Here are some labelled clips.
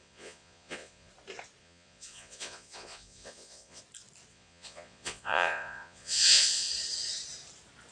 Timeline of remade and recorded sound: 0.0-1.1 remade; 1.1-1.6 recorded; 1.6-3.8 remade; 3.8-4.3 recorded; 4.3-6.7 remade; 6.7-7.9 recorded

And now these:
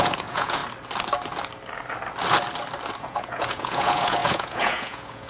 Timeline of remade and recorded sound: 0.0-0.6 remade; 0.6-3.0 recorded; 3.0-5.3 remade

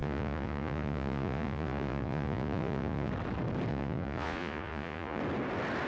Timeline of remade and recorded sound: 0.0-3.1 remade; 3.1-3.7 recorded; 3.7-5.2 remade; 5.2-5.9 recorded

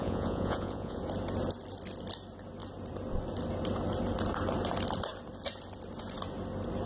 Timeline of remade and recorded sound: 0.0-1.0 remade; 1.0-6.9 recorded